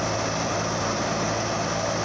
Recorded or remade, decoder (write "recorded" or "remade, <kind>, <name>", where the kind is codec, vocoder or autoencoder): recorded